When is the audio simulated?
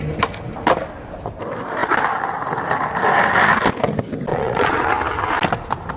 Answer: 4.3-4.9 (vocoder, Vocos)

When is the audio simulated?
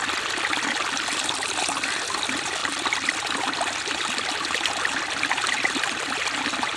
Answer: 0.0-0.5 (vocoder, BigVGAN v2); 2.6-6.8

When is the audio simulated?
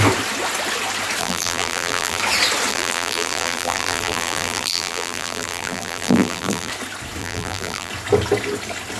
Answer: 1.2-2.2 (vocoder, BigVGAN v2); 2.7-6.7; 7.2-7.9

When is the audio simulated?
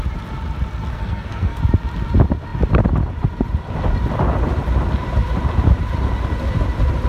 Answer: 0.9-1.6 (codec, SNAC)